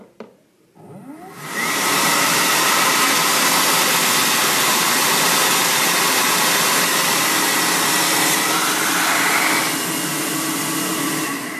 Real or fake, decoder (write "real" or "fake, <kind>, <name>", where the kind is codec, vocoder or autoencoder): real